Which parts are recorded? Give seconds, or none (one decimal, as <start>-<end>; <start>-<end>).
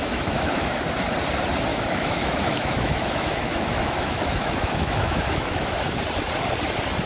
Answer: 0.8-1.7; 6.0-7.1